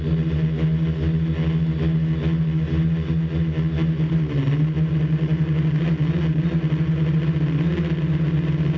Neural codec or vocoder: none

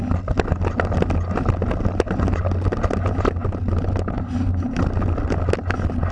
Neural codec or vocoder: none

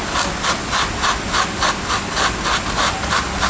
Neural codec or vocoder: none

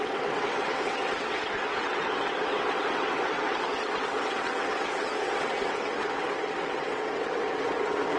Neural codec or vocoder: vocoder, WaveNeXt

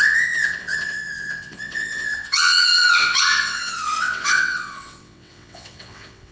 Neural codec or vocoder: vocoder, WaveNeXt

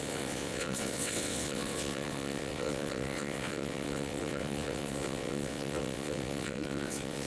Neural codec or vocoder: vocoder, WaveNeXt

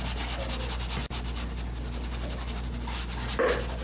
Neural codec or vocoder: none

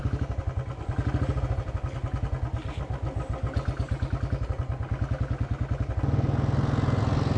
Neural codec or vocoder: none